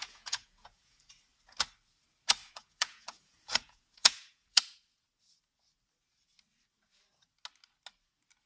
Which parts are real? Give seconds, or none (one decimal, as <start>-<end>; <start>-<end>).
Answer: 1.0-2.4; 4.6-8.5